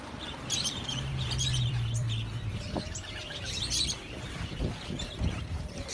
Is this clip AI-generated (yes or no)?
yes